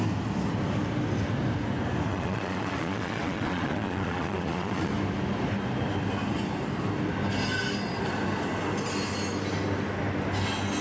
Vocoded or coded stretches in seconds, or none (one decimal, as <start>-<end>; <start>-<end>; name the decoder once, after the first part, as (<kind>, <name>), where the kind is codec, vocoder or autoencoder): 2.1-4.9 (vocoder, Vocos)